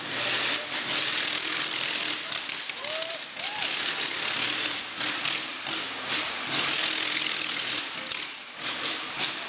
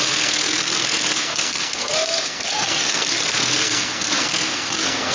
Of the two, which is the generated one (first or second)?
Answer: second